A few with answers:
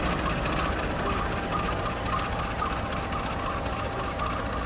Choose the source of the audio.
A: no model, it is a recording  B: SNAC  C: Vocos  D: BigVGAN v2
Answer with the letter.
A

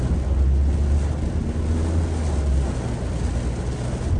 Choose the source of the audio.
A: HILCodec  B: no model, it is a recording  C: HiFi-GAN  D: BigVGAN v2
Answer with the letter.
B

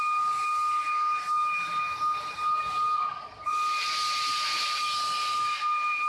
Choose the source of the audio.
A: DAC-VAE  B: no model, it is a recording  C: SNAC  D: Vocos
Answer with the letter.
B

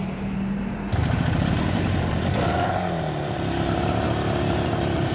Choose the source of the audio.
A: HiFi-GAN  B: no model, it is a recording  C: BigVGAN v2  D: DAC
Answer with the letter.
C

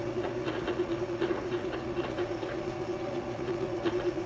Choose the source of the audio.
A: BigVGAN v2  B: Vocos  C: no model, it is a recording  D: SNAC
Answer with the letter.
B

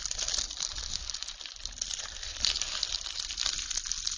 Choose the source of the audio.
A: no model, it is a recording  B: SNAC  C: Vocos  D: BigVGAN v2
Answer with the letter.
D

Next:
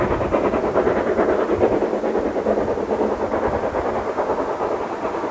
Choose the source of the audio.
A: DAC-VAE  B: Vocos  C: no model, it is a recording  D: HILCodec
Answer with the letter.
C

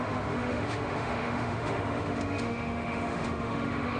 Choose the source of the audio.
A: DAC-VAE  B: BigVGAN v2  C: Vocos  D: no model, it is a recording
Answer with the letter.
A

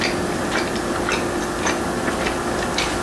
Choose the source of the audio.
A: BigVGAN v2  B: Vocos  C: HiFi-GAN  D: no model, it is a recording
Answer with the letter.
D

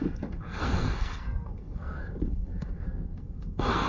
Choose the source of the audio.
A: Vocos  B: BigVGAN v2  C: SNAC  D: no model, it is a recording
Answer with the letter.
C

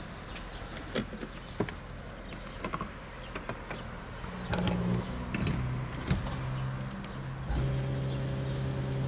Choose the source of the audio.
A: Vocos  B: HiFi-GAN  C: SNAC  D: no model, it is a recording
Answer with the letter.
D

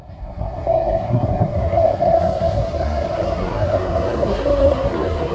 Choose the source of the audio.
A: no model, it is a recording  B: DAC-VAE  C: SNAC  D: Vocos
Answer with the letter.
C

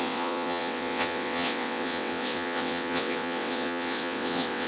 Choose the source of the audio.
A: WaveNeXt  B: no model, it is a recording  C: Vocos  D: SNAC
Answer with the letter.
A